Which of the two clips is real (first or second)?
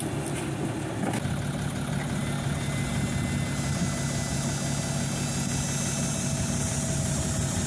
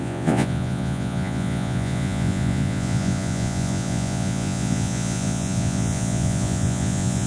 first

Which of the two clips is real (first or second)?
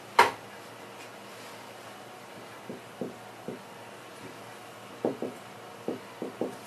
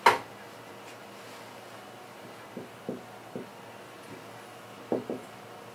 second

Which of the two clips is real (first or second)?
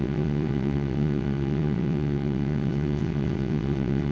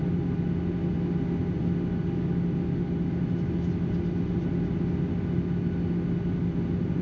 second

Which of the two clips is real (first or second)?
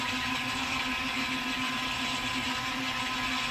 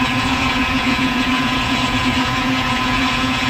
first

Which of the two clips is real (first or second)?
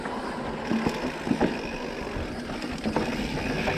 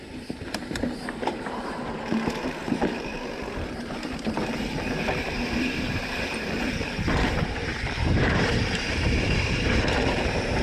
first